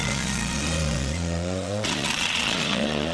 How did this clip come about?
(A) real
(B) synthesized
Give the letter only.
B